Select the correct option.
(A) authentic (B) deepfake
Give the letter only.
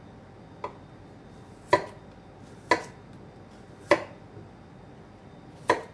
A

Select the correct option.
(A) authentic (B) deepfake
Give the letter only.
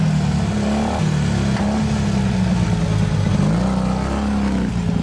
A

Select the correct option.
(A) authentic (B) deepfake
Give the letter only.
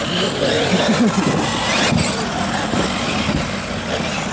A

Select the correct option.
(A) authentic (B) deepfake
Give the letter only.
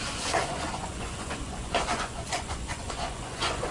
B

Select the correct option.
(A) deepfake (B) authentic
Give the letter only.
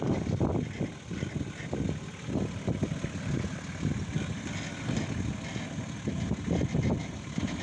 B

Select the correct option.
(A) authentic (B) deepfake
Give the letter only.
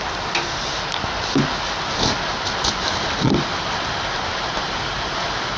A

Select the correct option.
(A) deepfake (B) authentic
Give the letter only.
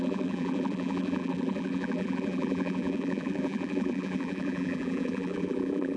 A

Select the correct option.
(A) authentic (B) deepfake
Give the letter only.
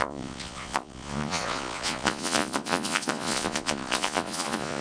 B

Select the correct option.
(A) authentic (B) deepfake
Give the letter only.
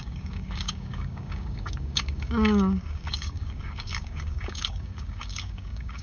B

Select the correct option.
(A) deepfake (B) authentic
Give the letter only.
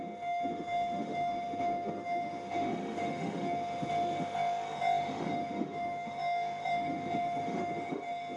A